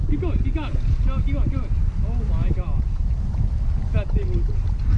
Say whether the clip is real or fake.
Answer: real